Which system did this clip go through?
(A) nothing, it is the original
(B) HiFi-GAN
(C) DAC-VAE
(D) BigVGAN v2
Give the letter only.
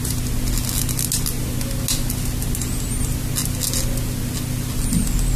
A